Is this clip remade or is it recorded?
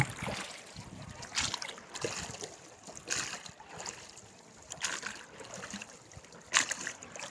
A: recorded